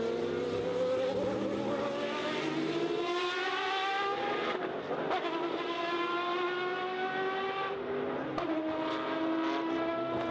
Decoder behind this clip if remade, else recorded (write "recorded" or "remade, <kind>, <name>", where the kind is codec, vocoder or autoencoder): recorded